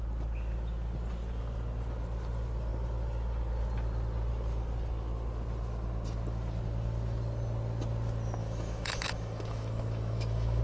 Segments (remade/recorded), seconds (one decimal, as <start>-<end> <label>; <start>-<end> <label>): 0.0-8.4 recorded; 8.4-10.6 remade